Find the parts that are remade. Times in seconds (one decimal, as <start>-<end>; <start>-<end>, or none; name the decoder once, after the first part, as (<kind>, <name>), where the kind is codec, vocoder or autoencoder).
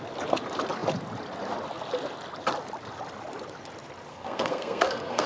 4.1-5.3 (codec, SNAC)